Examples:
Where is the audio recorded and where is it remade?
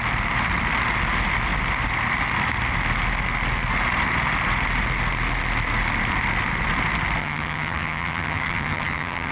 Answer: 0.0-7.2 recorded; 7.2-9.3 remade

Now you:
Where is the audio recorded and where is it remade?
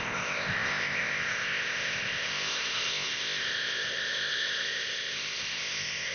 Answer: 0.0-6.1 remade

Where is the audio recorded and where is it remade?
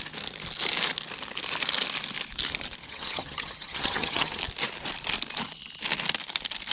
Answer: 0.0-2.8 recorded; 2.8-4.4 remade; 4.4-6.7 recorded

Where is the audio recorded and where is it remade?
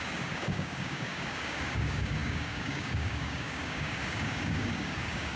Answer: 0.0-5.4 remade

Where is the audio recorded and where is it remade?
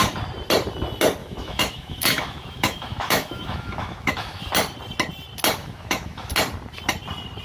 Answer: 0.0-1.2 recorded; 1.2-4.5 remade; 4.5-5.6 recorded; 5.6-6.3 remade; 6.3-7.4 recorded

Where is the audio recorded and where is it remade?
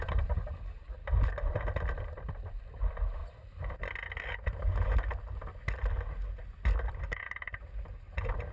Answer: 0.0-1.0 remade; 1.0-2.8 recorded; 2.8-3.2 remade; 3.2-6.9 recorded; 6.9-8.5 remade